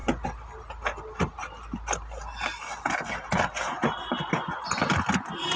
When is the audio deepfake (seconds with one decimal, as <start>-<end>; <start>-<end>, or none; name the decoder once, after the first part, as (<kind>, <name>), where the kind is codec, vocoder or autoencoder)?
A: none